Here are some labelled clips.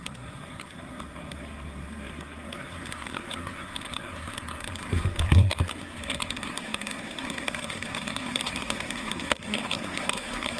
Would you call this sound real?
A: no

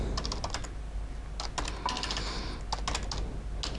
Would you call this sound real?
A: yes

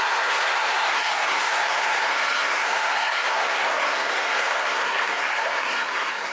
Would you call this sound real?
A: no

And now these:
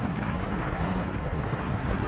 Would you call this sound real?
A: no